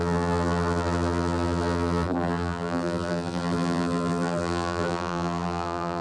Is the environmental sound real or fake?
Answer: fake